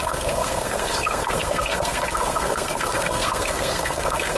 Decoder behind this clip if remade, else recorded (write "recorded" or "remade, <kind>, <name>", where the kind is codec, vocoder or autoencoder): remade, codec, SNAC